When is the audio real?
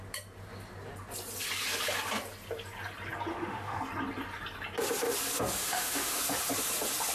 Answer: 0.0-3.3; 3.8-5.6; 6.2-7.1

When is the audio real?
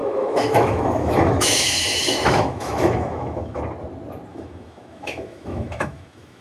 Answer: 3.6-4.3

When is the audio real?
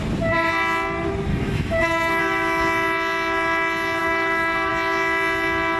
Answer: 0.0-1.3; 2.2-4.0; 4.7-5.8